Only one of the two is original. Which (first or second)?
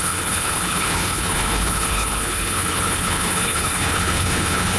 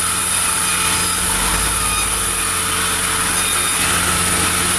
second